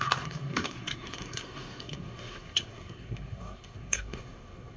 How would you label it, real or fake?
fake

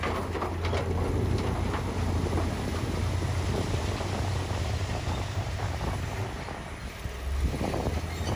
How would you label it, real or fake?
real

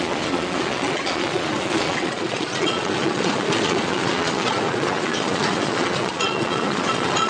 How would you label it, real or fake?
fake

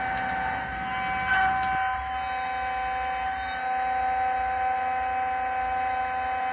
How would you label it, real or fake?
real